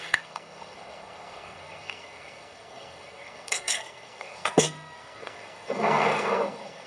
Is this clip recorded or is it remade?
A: remade